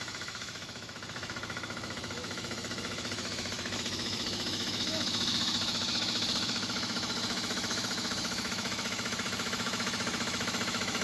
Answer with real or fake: fake